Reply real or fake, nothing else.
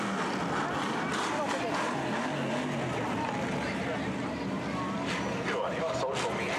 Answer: real